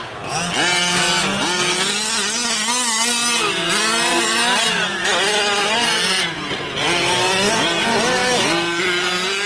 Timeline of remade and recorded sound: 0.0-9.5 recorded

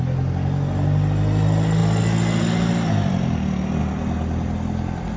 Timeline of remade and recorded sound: 0.0-5.2 recorded

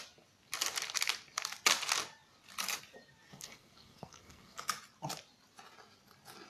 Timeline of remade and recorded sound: 0.0-3.3 recorded; 3.3-4.7 remade; 4.7-6.5 recorded